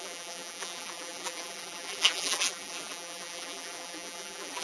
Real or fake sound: fake